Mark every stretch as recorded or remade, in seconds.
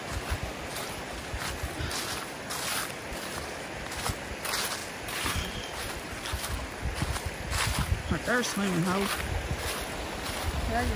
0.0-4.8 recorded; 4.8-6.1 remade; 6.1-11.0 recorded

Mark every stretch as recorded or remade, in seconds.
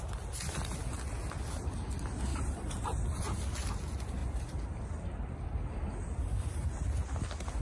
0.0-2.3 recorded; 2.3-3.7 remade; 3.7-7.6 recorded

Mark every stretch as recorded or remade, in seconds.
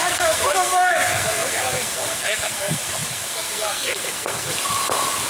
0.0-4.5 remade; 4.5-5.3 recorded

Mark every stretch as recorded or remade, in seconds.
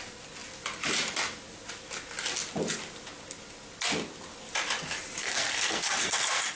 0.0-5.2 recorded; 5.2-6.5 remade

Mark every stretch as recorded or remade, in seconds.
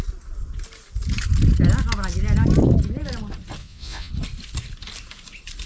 0.0-3.6 recorded; 3.6-4.1 remade; 4.1-5.7 recorded